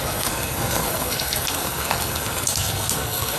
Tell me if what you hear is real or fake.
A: fake